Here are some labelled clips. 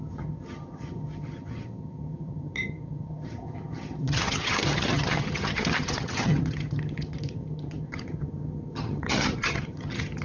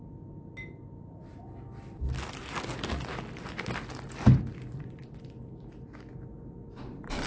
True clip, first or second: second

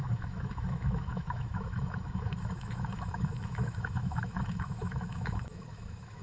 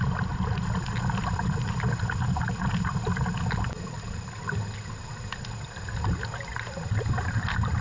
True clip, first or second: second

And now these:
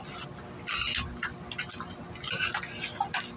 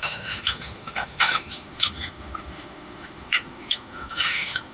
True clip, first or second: first